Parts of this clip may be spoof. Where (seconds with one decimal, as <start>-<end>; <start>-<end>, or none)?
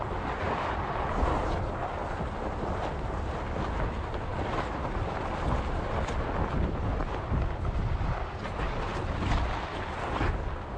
none